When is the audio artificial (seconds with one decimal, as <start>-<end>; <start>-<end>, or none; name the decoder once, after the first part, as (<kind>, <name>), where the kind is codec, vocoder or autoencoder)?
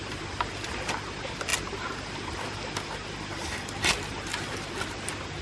none